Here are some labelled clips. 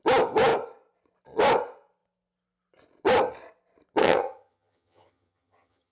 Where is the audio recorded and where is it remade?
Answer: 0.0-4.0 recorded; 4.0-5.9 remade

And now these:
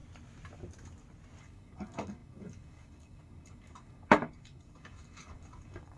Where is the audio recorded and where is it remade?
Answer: 0.0-1.4 recorded; 1.4-6.0 remade

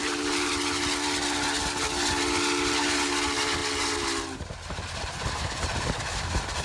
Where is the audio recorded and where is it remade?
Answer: 0.0-0.5 remade; 0.5-6.6 recorded

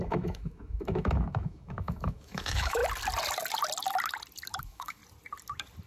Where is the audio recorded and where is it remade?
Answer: 0.0-2.8 remade; 2.8-4.6 recorded; 4.6-5.0 remade; 5.0-5.9 recorded

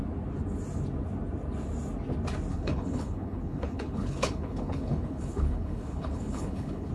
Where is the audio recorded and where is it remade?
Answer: 0.0-2.5 recorded; 2.5-6.9 remade